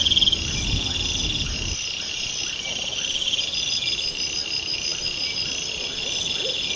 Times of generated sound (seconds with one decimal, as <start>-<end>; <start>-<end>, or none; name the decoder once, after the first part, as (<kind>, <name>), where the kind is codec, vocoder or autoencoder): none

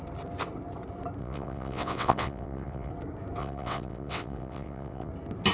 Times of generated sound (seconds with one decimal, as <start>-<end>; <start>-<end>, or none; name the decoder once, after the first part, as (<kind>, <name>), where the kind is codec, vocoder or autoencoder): 1.2-2.9 (vocoder, WaveNeXt); 3.4-5.1

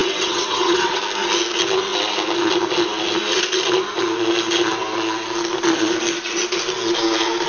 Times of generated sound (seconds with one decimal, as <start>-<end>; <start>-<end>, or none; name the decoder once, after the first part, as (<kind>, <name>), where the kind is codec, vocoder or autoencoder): 0.0-1.0 (vocoder, WaveNeXt)